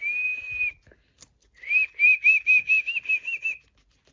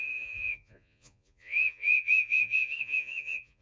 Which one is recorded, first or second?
first